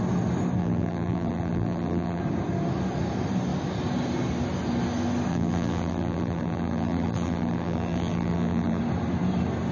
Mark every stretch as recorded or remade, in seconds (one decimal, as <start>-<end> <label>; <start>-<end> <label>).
0.0-0.6 recorded; 0.6-2.2 remade; 2.2-5.3 recorded; 5.3-8.8 remade; 8.8-9.7 recorded